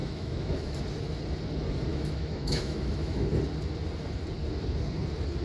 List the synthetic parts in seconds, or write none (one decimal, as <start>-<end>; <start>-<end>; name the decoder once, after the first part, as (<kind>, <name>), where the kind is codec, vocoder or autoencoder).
0.0-0.8 (autoencoder, DAC-VAE); 1.9-3.3